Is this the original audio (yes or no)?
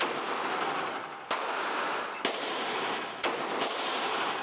yes